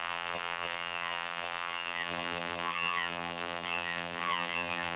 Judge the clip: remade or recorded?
remade